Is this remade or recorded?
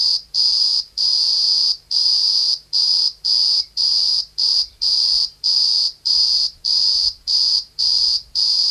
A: remade